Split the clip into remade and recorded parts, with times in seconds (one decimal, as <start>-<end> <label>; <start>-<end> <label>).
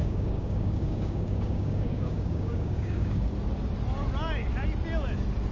0.0-3.3 remade; 3.3-5.5 recorded